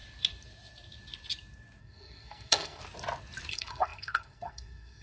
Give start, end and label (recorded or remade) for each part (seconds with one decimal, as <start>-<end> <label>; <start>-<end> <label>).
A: 0.0-1.8 recorded; 1.8-2.8 remade; 2.8-3.5 recorded; 3.5-5.0 remade